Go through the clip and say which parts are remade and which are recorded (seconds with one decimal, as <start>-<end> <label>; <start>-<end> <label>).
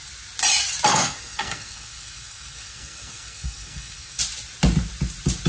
0.0-0.9 recorded; 0.9-4.2 remade; 4.2-5.5 recorded